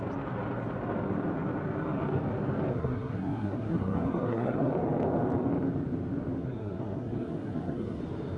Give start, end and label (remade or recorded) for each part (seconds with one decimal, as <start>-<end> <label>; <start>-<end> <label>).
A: 0.0-2.7 recorded; 2.7-4.7 remade; 4.7-6.4 recorded; 6.4-8.0 remade; 8.0-8.4 recorded